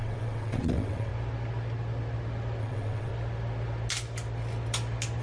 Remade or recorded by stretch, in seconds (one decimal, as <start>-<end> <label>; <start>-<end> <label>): 0.0-1.1 remade; 1.1-2.6 recorded; 2.6-3.1 remade; 3.1-5.2 recorded